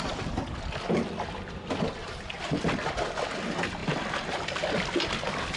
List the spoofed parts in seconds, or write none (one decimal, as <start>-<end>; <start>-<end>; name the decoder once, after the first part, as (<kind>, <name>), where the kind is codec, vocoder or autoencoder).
2.0-2.5 (vocoder, BigVGAN v2)